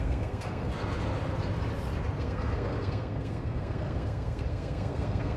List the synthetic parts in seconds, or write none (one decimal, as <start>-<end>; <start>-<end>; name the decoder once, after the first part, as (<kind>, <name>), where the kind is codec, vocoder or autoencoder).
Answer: 0.0-0.7 (codec, SNAC); 2.2-5.4